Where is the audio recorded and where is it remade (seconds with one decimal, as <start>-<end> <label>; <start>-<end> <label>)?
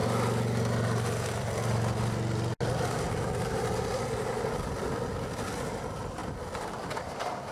0.0-7.5 recorded